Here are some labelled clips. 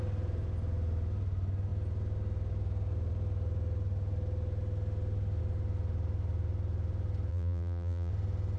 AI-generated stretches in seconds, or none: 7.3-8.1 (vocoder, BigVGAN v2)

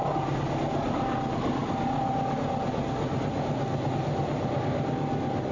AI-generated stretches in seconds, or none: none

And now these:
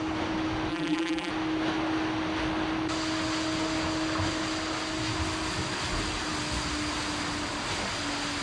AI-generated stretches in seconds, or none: 0.7-1.3 (vocoder, BigVGAN v2)